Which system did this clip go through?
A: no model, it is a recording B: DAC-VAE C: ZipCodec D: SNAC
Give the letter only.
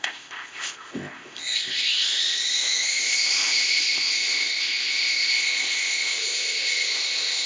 C